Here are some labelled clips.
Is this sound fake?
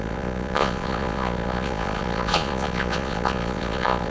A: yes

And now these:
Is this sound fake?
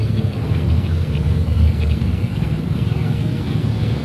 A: yes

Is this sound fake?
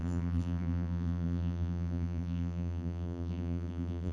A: yes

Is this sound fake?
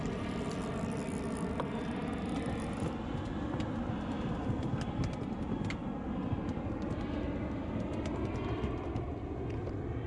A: no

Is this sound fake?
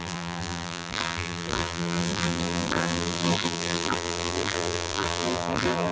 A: yes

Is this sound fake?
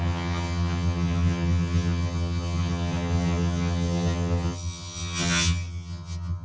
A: yes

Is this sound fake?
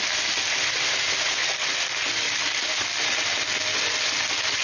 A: no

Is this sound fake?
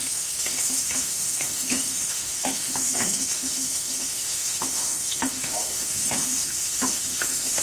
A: yes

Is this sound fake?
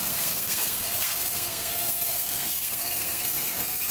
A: yes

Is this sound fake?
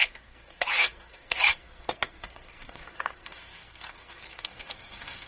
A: yes